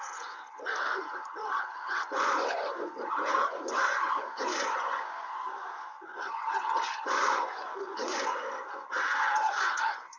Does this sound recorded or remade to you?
remade